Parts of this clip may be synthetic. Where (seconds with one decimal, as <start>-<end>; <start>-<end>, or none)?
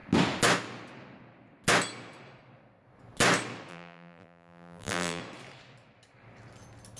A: 3.7-5.2